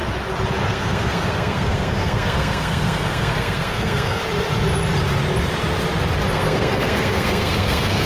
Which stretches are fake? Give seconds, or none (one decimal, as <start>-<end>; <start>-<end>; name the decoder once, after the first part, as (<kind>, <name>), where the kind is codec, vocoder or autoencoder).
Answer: 0.7-4.2 (codec, SNAC); 6.3-8.1